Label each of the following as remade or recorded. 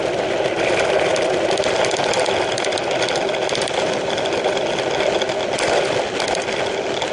recorded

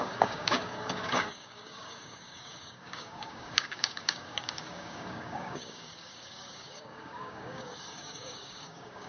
remade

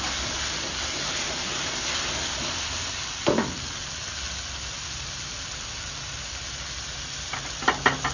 recorded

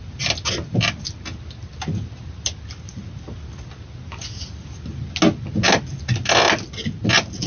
recorded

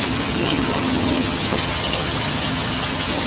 remade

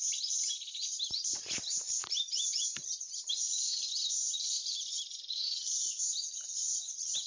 remade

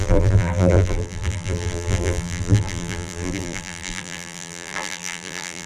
remade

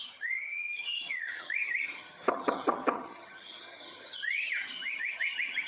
remade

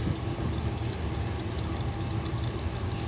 recorded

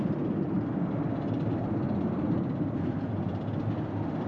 recorded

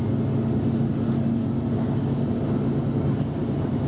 recorded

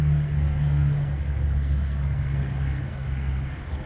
remade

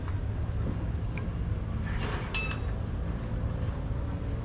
recorded